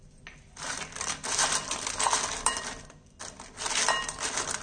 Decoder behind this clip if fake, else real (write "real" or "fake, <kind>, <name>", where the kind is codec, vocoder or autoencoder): real